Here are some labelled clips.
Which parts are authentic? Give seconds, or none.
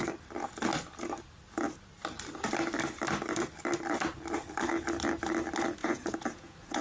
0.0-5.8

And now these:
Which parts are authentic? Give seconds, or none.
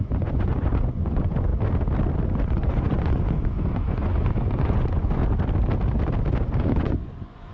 1.5-2.3; 5.2-6.6